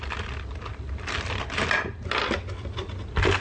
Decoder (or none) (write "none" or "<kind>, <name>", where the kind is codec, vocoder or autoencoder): none